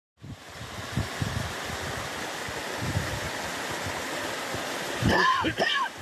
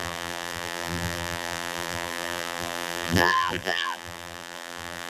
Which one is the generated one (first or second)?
second